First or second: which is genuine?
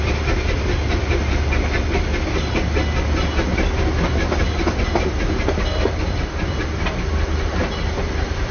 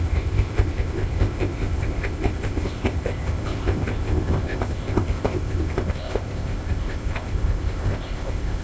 first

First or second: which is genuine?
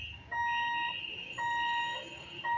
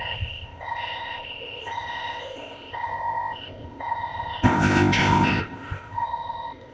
first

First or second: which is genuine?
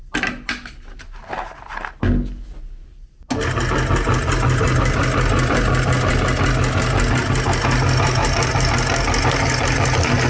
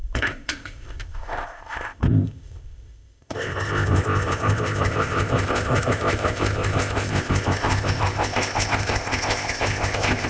first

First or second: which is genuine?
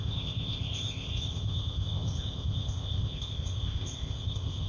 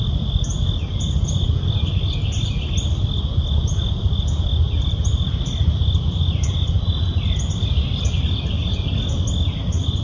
second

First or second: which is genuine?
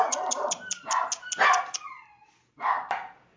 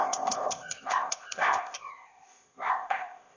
first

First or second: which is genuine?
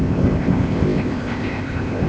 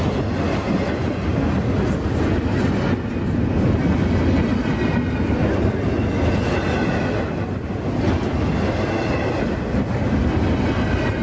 second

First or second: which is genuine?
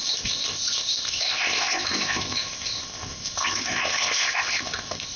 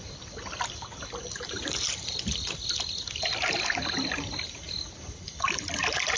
second